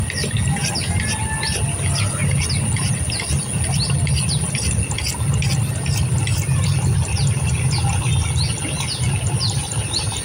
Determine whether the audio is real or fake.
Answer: real